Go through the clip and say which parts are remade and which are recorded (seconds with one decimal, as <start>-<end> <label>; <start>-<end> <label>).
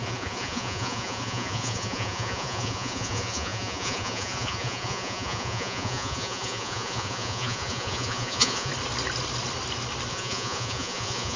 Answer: 0.0-8.7 remade; 8.7-10.1 recorded; 10.1-11.4 remade